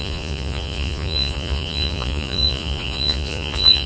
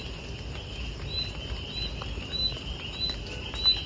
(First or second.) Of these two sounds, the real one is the second